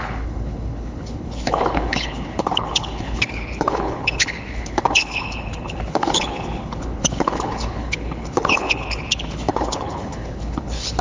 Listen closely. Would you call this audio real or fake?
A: fake